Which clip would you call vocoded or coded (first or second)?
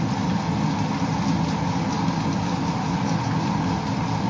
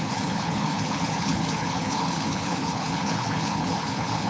second